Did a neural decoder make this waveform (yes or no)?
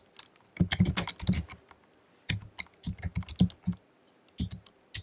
no